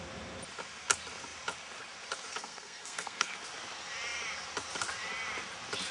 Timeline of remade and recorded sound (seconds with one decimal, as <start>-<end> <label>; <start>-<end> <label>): 0.0-2.4 recorded; 2.4-3.3 remade; 3.3-5.9 recorded